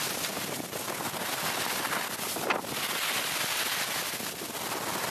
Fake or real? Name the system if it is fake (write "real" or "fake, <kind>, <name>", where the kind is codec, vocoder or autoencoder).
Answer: real